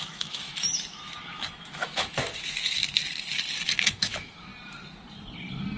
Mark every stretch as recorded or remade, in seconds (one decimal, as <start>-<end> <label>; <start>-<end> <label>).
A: 0.0-3.0 remade; 3.0-4.0 recorded; 4.0-4.5 remade; 4.5-5.8 recorded

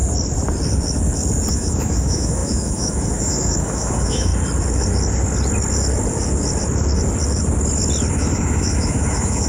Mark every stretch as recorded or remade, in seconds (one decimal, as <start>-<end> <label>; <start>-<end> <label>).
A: 0.0-1.5 recorded; 1.5-4.3 remade; 4.3-8.1 recorded; 8.1-9.5 remade

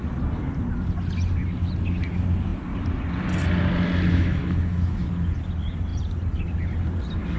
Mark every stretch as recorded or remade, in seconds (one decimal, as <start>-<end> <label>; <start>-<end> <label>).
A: 0.0-4.1 recorded; 4.1-5.0 remade; 5.0-7.4 recorded

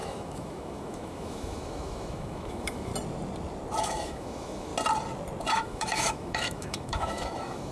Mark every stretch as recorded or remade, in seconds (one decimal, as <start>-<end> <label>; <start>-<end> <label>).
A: 0.0-2.9 remade; 2.9-3.8 recorded; 3.8-4.7 remade; 4.7-5.5 recorded; 5.5-7.7 remade

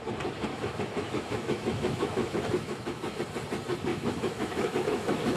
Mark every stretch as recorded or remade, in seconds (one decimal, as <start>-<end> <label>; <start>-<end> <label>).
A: 0.0-0.5 recorded; 0.5-3.2 remade; 3.2-3.9 recorded; 3.9-5.4 remade

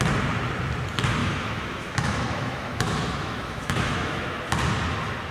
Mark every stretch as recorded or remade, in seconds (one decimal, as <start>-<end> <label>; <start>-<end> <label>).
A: 0.0-1.2 recorded; 1.2-4.4 remade; 4.4-5.3 recorded

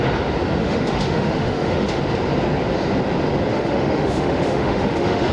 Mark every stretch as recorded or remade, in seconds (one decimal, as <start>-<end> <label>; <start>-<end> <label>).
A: 0.0-0.6 recorded; 0.6-2.0 remade; 2.0-3.5 recorded; 3.5-5.3 remade

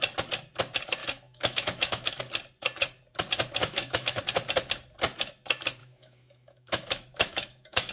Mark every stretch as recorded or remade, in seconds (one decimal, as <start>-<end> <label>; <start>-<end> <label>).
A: 0.0-1.0 recorded; 1.0-2.2 remade; 2.2-3.6 recorded; 3.6-4.2 remade; 4.2-5.8 recorded; 5.8-7.9 remade